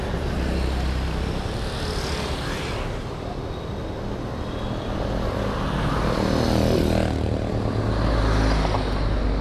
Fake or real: real